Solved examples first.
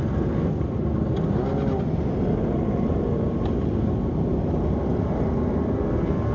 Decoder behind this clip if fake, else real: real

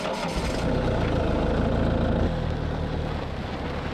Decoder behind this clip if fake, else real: real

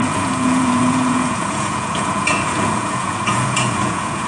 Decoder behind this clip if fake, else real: fake, vocoder, Vocos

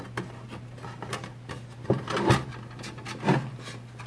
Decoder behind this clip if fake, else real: real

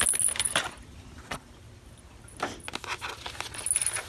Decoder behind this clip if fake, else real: real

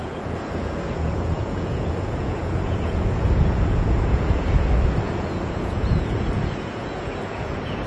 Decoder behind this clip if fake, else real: fake, vocoder, Vocos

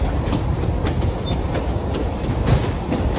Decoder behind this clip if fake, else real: real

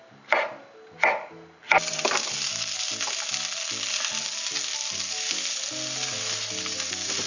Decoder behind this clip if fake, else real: real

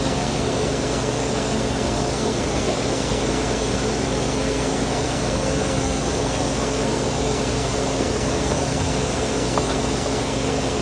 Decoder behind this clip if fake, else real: fake, codec, SNAC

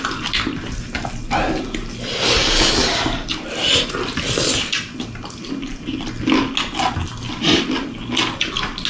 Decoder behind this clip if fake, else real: real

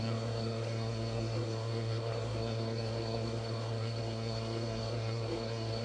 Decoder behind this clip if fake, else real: fake, codec, SNAC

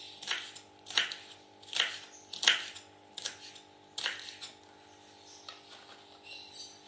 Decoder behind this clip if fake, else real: real